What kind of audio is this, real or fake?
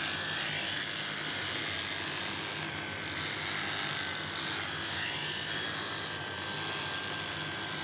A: real